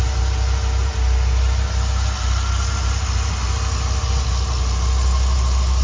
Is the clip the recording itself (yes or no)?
yes